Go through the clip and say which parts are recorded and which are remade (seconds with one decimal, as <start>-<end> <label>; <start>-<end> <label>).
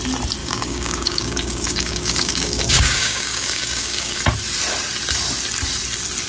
0.0-0.4 recorded; 0.4-4.2 remade; 4.2-6.3 recorded